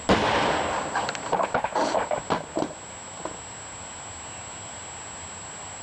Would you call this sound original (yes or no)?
yes